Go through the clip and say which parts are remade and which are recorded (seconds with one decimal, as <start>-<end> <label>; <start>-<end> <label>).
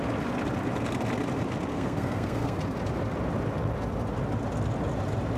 0.0-1.7 recorded; 1.7-2.6 remade; 2.6-5.4 recorded